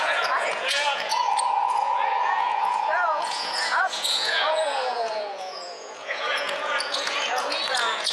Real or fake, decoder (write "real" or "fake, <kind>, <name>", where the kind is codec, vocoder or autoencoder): fake, vocoder, Vocos